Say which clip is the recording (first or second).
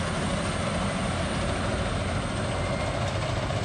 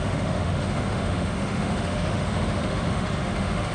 first